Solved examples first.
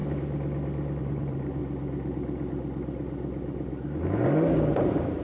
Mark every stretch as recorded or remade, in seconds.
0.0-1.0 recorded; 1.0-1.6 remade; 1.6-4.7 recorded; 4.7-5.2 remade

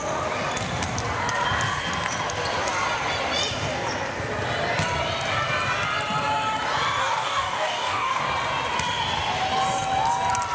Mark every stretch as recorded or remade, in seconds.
0.0-7.0 recorded; 7.0-8.2 remade; 8.2-10.5 recorded

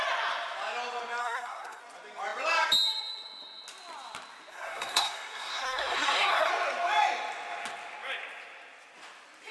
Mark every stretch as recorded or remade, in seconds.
0.0-1.2 recorded; 1.2-1.8 remade; 1.8-4.5 recorded; 4.5-6.5 remade; 6.5-9.5 recorded

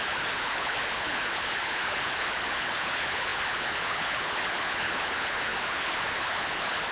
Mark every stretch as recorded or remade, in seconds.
0.0-6.9 remade